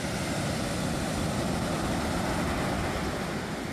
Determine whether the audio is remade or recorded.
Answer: recorded